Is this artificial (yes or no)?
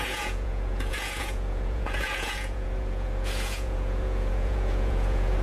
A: yes